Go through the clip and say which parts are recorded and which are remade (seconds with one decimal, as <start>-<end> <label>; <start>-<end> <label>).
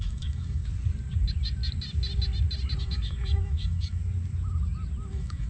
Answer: 0.0-0.6 remade; 0.6-2.8 recorded; 2.8-4.0 remade; 4.0-5.1 recorded; 5.1-5.5 remade